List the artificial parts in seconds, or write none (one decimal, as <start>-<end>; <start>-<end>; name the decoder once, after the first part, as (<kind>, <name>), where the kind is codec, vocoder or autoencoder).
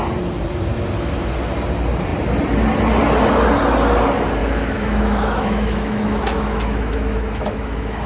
4.4-8.1 (autoencoder, DAC-VAE)